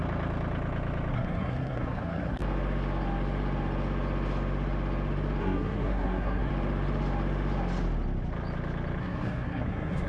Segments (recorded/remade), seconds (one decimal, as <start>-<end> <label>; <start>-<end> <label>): 0.0-1.1 recorded; 1.1-2.4 remade; 2.4-5.4 recorded; 5.4-6.5 remade; 6.5-9.0 recorded; 9.0-10.1 remade

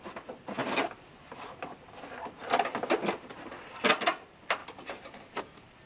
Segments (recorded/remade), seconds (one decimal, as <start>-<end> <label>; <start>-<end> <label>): 0.0-5.9 recorded

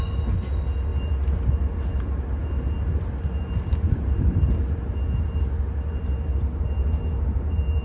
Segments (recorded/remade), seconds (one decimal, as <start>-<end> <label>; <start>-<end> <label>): 0.0-7.8 recorded

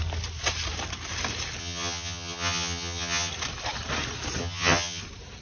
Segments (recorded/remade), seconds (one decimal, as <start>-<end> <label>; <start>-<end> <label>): 0.0-1.6 recorded; 1.6-3.3 remade; 3.3-4.4 recorded; 4.4-5.0 remade; 5.0-5.4 recorded

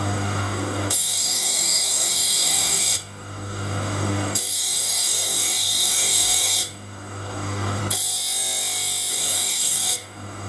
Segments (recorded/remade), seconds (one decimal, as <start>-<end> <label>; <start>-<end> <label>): 0.0-7.8 remade; 7.8-9.1 recorded; 9.1-10.5 remade

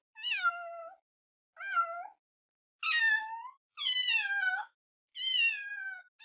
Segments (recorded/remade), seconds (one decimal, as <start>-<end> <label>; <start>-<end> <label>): 0.0-0.8 remade; 0.8-4.5 recorded; 4.5-5.1 remade; 5.1-6.2 recorded